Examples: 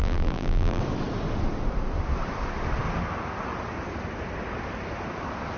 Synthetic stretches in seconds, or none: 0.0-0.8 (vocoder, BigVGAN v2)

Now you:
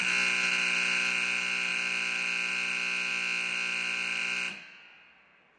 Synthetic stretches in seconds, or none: none